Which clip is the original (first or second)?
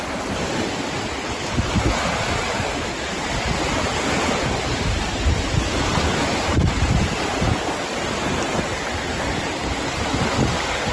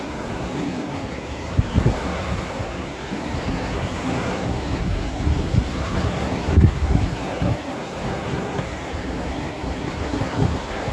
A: first